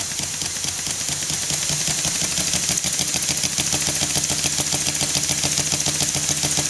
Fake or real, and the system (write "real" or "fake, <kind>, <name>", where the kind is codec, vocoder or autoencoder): real